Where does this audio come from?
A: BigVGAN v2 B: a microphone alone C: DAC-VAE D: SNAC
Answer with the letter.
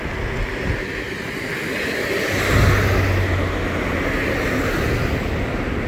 B